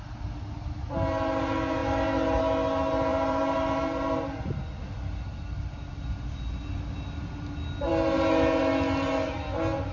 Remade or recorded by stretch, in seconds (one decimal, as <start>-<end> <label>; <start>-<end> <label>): 0.0-3.1 recorded; 3.1-4.4 remade; 4.4-9.9 recorded